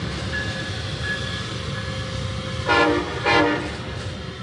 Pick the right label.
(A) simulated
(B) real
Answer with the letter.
B